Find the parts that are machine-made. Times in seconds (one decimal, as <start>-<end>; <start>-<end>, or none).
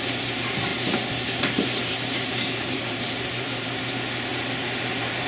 0.7-3.9; 4.3-5.3